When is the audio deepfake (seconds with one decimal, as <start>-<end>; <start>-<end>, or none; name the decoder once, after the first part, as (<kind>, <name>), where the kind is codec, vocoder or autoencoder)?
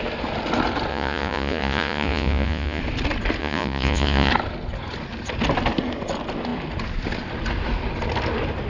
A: 0.9-2.8 (vocoder, Vocos); 3.4-4.3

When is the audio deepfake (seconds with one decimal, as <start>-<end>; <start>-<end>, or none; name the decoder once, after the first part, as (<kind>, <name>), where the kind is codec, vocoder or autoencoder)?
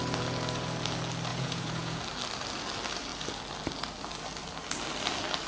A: 1.3-2.0 (vocoder, Vocos)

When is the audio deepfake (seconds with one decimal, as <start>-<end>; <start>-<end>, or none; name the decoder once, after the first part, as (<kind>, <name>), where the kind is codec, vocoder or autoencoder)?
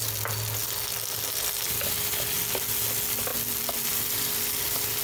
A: none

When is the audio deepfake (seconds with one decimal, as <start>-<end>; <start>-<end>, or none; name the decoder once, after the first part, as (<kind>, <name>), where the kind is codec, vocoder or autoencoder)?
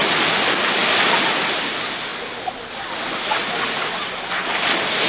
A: none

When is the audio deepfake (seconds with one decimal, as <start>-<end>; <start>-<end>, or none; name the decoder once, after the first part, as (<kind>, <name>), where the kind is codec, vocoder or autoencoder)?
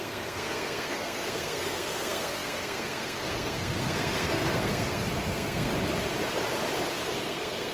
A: 0.0-5.7 (codec, SNAC); 7.2-7.7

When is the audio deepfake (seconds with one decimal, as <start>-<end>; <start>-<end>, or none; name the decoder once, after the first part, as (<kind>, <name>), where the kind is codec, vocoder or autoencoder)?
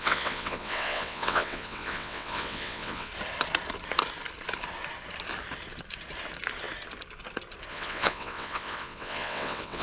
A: 0.0-3.1 (vocoder, WaveNeXt); 7.7-9.8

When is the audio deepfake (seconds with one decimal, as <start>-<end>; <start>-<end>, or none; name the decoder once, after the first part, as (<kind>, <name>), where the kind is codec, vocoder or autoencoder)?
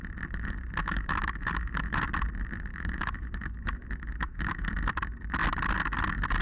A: 0.8-2.0 (autoencoder, DAC-VAE); 2.7-4.7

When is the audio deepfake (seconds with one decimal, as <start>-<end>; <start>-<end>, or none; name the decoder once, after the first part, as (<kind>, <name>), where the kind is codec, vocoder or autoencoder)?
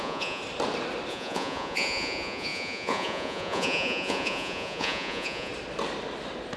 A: 0.0-0.4 (vocoder, Vocos); 1.1-5.5